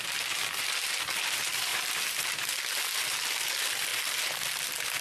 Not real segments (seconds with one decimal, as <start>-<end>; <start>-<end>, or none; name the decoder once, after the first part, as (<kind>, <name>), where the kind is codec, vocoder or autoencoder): none